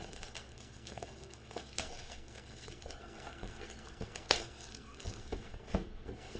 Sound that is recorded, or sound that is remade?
remade